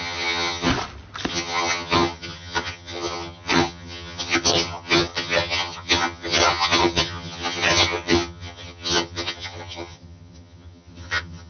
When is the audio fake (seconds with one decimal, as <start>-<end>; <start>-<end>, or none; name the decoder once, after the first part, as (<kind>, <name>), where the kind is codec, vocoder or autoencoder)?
0.0-0.7 (vocoder, HiFi-GAN); 1.3-11.5